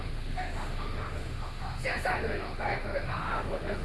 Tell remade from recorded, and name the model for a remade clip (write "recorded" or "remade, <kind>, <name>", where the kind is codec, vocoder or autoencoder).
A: remade, autoencoder, DAC-VAE